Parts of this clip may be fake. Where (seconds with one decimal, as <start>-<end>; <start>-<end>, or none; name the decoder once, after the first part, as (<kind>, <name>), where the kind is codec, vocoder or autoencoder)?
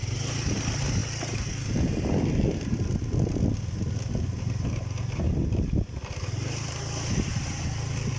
none